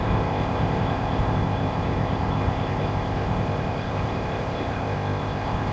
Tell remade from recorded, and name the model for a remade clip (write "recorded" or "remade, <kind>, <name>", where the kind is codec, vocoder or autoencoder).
remade, codec, ZipCodec